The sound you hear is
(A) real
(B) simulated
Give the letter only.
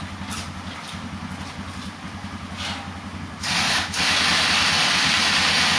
A